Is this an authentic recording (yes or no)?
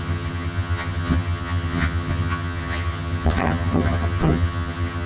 no